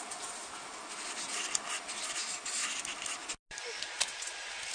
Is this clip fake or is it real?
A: real